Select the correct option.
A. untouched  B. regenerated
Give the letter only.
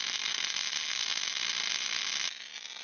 A